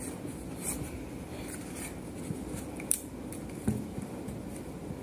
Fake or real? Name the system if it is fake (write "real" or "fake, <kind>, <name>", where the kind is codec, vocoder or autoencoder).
real